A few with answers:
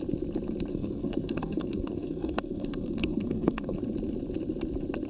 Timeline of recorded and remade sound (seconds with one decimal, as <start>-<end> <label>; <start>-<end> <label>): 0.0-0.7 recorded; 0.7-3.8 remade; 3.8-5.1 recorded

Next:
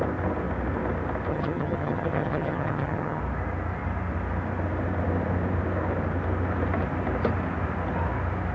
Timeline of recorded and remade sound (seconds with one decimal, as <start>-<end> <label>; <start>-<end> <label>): 0.0-1.3 recorded; 1.3-3.2 remade; 3.2-8.5 recorded

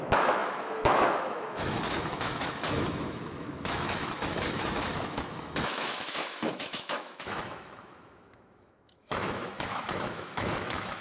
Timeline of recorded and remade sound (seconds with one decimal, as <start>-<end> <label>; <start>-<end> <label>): 0.0-11.0 remade

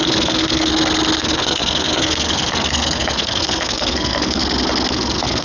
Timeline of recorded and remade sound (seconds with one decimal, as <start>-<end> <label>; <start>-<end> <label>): 0.0-0.7 remade; 0.7-1.2 recorded; 1.2-4.4 remade; 4.4-4.9 recorded; 4.9-5.4 remade

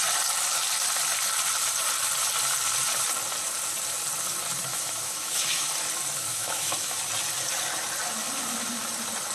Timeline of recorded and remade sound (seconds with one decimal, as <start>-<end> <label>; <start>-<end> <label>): 0.0-4.7 recorded; 4.7-5.7 remade; 5.7-6.3 recorded; 6.3-7.0 remade; 7.0-9.3 recorded

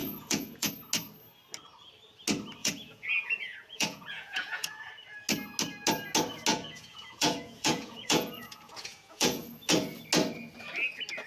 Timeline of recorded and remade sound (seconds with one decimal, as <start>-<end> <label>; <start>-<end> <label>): 0.0-0.7 remade; 0.7-2.6 recorded; 2.6-4.9 remade; 4.9-6.5 recorded; 6.5-9.7 remade; 9.7-11.3 recorded

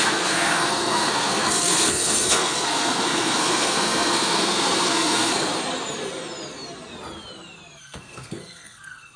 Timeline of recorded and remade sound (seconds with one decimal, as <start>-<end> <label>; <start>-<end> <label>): 0.0-5.5 remade; 5.5-7.8 recorded; 7.8-9.2 remade